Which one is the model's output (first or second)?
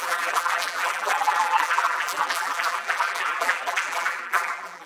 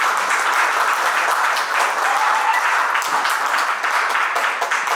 first